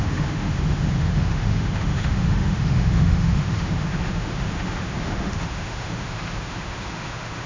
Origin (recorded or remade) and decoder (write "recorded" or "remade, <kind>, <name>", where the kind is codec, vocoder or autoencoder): remade, autoencoder, DAC-VAE